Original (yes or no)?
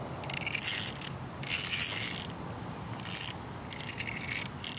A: yes